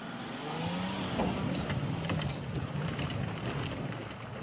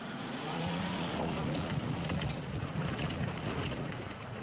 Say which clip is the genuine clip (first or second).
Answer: first